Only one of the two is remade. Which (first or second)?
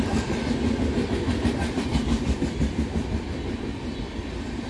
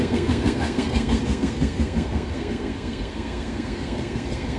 second